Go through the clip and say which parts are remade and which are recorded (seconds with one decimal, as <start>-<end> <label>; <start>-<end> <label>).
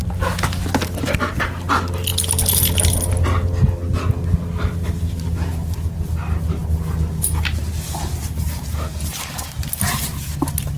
0.0-10.8 recorded